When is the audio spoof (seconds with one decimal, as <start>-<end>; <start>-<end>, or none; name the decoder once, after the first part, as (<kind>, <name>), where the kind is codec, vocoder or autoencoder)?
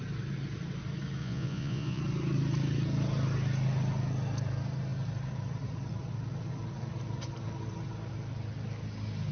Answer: 1.2-2.0 (vocoder, Vocos)